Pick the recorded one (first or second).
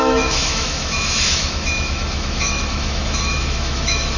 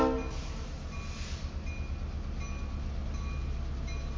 second